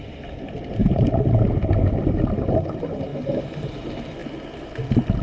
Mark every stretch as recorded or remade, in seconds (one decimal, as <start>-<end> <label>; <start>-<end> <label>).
0.0-5.2 recorded

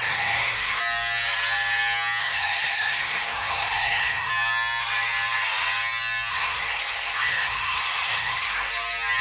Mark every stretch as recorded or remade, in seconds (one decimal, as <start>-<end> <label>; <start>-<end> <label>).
0.0-0.8 remade; 0.8-2.2 recorded; 2.2-4.3 remade; 4.3-6.3 recorded; 6.3-8.7 remade; 8.7-9.2 recorded

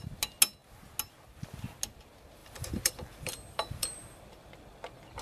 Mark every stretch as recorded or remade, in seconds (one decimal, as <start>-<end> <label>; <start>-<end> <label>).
0.0-2.4 recorded; 2.4-4.2 remade; 4.2-5.2 recorded

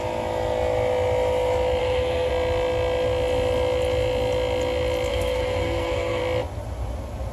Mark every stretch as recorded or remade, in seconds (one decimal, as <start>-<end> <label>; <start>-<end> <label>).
0.0-1.8 recorded; 1.8-2.3 remade; 2.3-5.1 recorded; 5.1-6.2 remade; 6.2-7.3 recorded

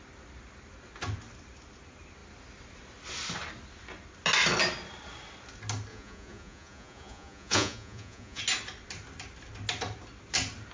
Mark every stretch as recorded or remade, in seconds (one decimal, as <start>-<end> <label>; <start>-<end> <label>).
0.0-5.9 recorded; 5.9-8.4 remade; 8.4-10.7 recorded